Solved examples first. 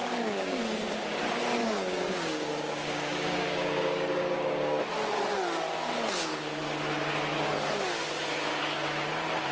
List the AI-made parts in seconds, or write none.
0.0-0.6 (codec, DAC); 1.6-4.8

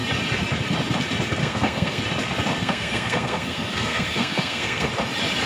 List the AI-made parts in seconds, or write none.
1.4-2.0 (codec, SNAC); 2.6-4.9